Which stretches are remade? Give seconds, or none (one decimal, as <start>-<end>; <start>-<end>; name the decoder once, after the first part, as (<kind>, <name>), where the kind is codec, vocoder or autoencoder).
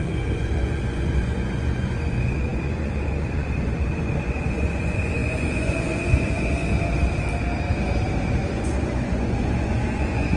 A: 0.0-6.7 (vocoder, Vocos); 8.5-10.4